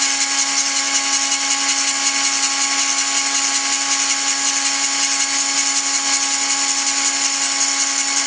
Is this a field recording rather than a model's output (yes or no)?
yes